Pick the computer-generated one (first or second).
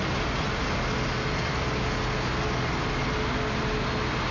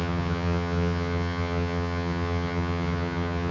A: second